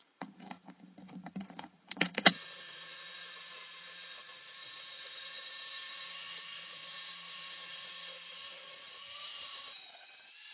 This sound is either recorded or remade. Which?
remade